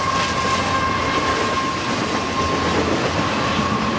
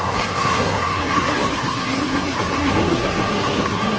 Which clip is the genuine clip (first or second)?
first